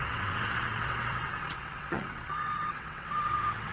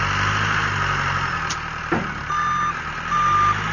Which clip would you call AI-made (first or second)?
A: first